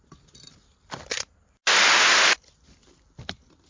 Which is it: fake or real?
real